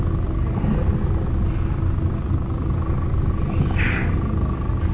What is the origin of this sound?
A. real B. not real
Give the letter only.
A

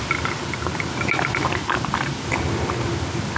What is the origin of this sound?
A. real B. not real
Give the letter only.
A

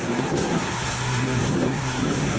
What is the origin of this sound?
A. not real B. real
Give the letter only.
A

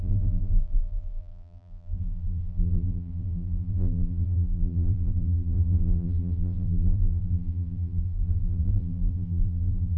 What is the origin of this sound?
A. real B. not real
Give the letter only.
B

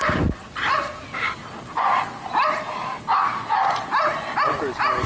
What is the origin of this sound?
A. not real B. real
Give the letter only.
B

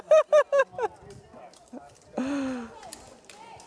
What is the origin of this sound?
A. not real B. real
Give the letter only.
B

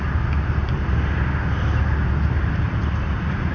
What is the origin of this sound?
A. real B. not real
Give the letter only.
A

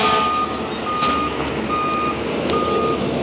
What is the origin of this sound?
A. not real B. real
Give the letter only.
B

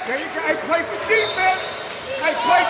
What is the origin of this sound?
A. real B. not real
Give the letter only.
B